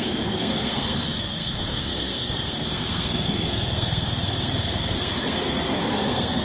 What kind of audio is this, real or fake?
fake